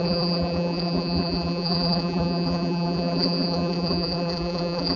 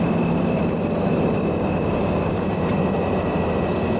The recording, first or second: second